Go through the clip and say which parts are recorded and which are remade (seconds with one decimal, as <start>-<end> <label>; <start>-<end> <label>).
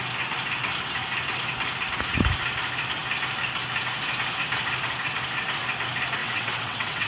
0.0-6.2 recorded; 6.2-7.1 remade